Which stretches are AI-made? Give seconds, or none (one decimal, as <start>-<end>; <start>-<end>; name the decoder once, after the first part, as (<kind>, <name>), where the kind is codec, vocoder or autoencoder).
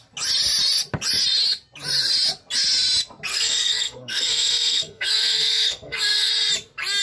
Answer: 3.3-6.3 (codec, SNAC)